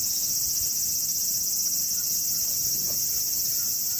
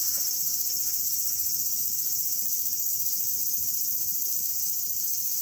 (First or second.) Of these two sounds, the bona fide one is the first